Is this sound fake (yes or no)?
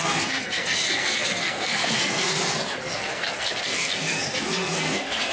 yes